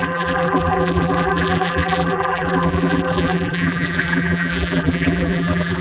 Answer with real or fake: fake